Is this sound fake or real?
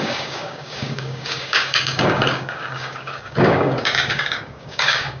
fake